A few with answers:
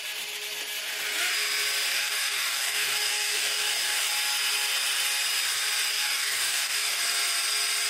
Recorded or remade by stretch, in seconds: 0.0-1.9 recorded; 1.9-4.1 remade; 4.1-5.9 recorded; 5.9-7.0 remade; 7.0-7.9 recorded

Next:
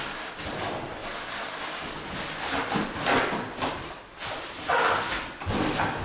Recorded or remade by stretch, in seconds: 0.0-6.0 recorded

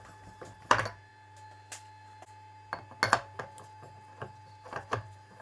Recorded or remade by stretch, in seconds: 0.0-5.4 recorded

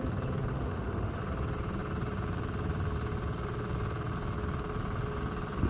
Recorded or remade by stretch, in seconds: 0.0-0.5 recorded; 0.5-1.2 remade; 1.2-5.7 recorded

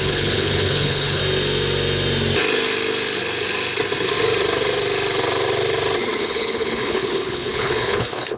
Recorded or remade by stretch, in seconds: 0.0-1.2 remade; 1.2-6.2 recorded; 6.2-8.4 remade

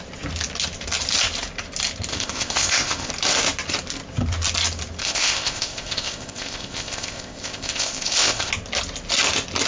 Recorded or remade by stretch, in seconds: 0.0-2.1 recorded; 2.1-3.1 remade; 3.1-5.0 recorded; 5.0-8.5 remade; 8.5-9.7 recorded